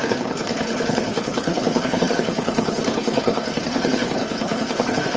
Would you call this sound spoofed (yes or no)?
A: yes